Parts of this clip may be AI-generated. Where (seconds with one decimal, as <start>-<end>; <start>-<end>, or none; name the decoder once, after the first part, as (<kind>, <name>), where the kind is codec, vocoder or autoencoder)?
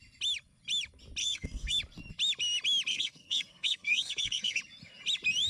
1.2-1.8 (codec, SNAC); 2.9-4.6